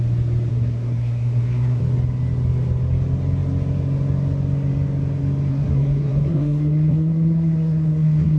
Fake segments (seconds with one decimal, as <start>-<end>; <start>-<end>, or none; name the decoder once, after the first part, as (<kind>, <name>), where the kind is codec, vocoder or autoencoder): 0.5-1.8 (codec, SNAC); 5.5-8.4